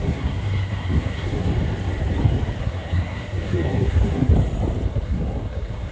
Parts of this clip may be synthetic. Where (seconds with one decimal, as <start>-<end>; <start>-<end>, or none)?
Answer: 0.0-1.5; 2.6-4.3; 4.9-5.9